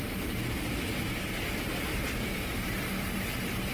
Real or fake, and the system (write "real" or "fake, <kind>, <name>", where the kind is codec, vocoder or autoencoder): fake, vocoder, BigVGAN v2